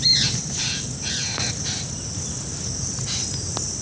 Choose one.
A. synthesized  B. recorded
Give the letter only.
B